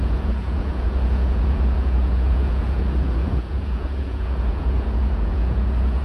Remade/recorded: remade